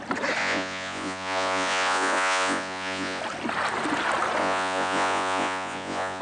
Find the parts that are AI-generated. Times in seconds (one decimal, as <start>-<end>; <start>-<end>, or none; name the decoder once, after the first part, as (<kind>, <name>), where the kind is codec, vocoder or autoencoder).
0.4-3.2 (vocoder, Vocos); 4.4-6.2